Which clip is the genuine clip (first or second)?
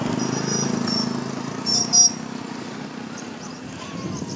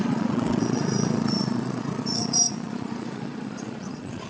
first